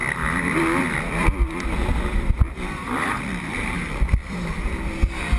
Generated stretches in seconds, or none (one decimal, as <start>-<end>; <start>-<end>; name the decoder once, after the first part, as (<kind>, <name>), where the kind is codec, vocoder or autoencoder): 0.0-5.4 (vocoder, BigVGAN v2)